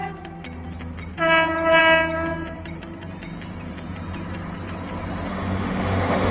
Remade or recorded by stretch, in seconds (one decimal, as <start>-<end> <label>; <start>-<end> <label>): 0.0-5.3 recorded; 5.3-6.3 remade